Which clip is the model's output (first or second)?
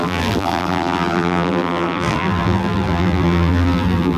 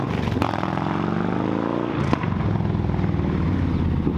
first